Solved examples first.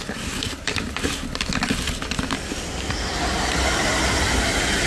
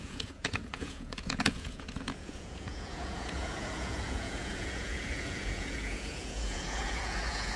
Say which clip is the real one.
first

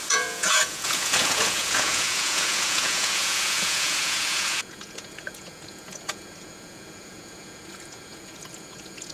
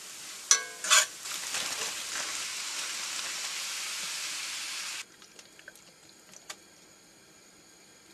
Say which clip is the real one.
second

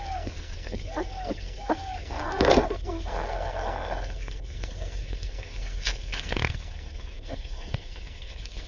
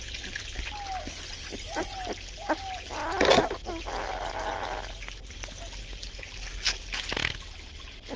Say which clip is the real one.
second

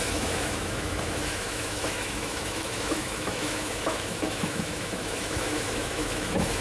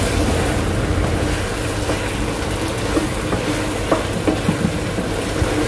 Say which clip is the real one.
second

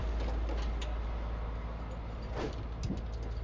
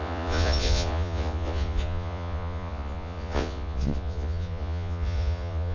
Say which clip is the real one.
first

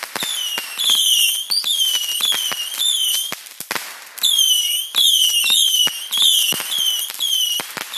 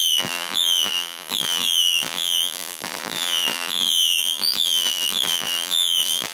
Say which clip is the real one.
first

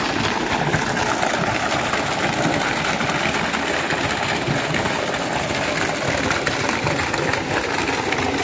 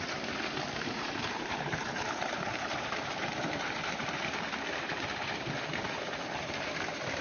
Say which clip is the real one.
first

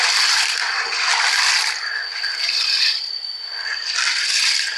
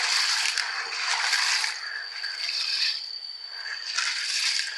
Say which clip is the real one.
second